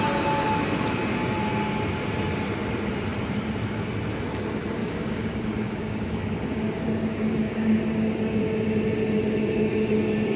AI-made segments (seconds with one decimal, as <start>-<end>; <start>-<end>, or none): 4.8-8.4